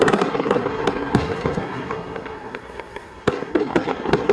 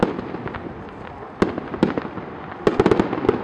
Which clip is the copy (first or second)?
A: first